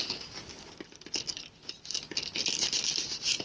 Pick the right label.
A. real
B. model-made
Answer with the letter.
A